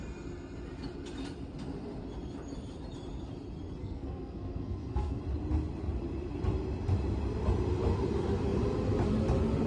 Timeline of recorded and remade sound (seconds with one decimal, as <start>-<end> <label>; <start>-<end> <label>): 0.0-3.8 recorded; 3.8-5.2 remade; 5.2-9.7 recorded